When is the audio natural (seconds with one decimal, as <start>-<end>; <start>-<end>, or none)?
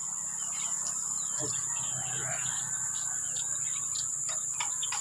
1.5-2.4; 4.6-5.0